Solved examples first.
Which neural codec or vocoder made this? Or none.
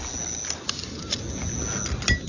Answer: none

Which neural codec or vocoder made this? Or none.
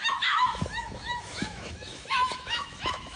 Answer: autoencoder, DAC-VAE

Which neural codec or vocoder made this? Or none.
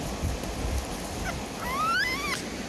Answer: none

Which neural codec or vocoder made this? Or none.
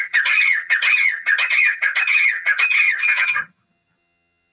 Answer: vocoder, HiFi-GAN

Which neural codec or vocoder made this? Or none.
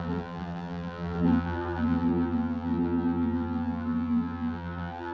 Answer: vocoder, BigVGAN v2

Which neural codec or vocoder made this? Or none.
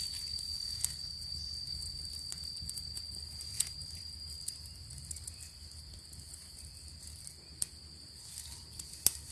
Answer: none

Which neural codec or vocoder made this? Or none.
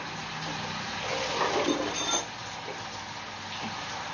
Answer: none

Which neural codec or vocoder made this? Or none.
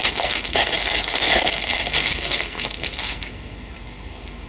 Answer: codec, SNAC